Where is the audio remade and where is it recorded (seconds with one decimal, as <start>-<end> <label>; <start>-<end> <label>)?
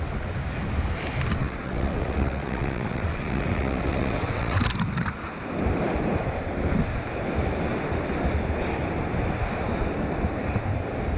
0.0-1.4 recorded; 1.4-4.6 remade; 4.6-11.2 recorded